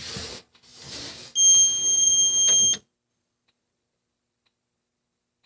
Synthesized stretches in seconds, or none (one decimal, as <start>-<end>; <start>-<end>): 0.0-0.7; 3.1-5.5

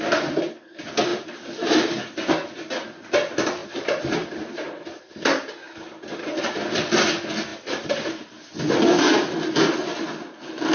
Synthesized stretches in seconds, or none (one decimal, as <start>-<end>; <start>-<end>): 1.1-2.0; 3.6-5.1; 7.5-8.4

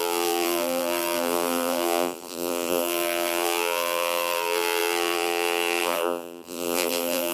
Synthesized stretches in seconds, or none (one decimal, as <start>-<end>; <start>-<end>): 0.0-7.3